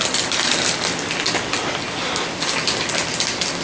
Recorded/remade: recorded